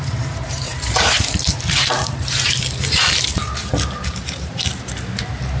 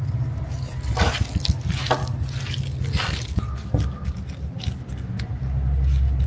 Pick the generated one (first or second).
first